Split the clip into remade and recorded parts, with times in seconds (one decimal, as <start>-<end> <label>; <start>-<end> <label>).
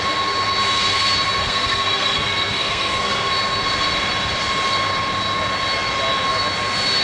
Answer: 0.0-1.4 recorded; 1.4-3.3 remade; 3.3-7.0 recorded